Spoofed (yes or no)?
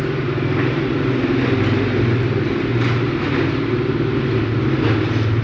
no